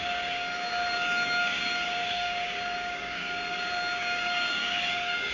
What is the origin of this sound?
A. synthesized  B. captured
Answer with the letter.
A